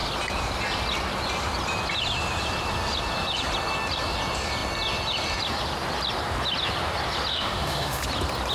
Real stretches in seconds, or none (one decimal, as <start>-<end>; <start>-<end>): 0.0-7.3; 8.0-8.5